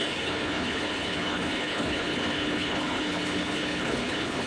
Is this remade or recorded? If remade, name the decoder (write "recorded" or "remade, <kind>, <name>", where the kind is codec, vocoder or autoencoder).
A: remade, codec, HILCodec